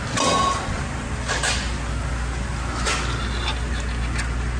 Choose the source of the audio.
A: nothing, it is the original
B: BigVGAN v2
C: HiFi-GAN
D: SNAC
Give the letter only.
A